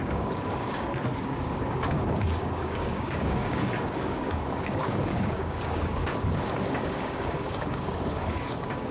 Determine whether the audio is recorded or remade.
remade